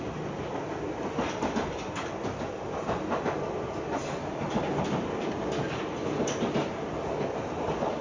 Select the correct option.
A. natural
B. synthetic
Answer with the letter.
A